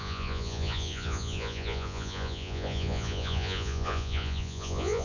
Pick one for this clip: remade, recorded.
remade